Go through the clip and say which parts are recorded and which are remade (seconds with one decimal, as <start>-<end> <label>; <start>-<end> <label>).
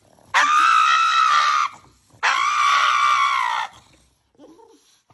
0.0-5.1 recorded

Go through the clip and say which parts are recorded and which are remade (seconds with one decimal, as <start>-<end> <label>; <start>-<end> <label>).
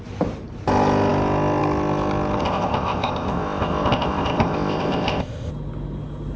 0.0-2.4 recorded; 2.4-5.5 remade; 5.5-6.4 recorded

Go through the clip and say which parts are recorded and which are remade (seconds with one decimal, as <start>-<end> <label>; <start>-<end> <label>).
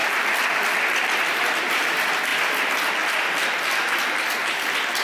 0.0-5.0 recorded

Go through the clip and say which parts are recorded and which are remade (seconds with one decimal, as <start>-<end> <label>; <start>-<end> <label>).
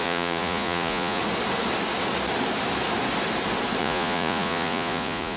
0.0-1.2 remade; 1.2-3.8 recorded; 3.8-5.4 remade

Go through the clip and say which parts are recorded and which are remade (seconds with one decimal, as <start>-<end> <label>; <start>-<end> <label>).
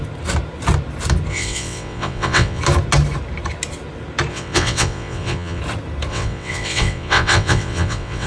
0.0-1.3 recorded; 1.3-2.6 remade; 2.6-4.3 recorded; 4.3-5.6 remade; 5.6-6.1 recorded; 6.1-8.3 remade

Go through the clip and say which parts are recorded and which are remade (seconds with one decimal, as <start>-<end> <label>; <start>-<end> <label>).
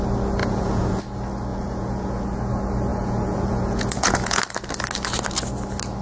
0.0-0.4 recorded; 0.4-1.0 remade; 1.0-1.5 recorded; 1.5-2.2 remade; 2.2-2.9 recorded; 2.9-4.4 remade; 4.4-6.0 recorded